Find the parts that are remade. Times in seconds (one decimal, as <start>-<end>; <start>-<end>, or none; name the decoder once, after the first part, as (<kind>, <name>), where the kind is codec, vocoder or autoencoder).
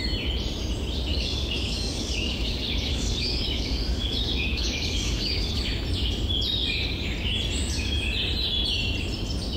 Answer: 1.1-5.5 (codec, DAC)